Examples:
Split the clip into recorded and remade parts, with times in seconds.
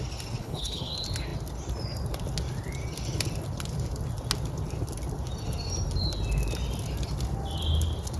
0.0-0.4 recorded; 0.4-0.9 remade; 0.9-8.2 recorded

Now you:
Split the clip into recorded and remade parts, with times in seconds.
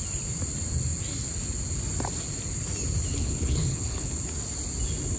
0.0-3.1 recorded; 3.1-4.1 remade; 4.1-5.2 recorded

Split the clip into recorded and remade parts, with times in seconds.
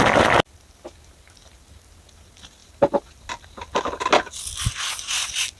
0.0-5.6 recorded